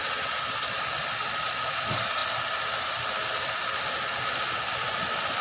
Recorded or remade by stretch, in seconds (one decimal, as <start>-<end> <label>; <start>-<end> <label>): 0.0-5.4 recorded